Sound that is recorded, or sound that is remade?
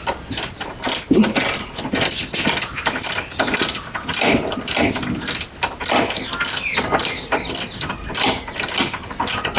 recorded